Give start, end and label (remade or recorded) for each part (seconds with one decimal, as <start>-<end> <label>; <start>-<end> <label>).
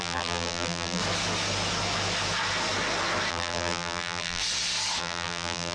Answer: 0.0-1.0 remade; 1.0-3.3 recorded; 3.3-4.4 remade; 4.4-5.0 recorded; 5.0-5.7 remade